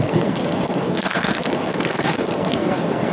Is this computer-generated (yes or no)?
yes